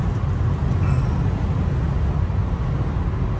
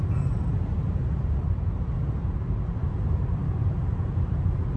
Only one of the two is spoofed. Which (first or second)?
second